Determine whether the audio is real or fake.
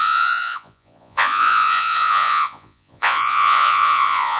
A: fake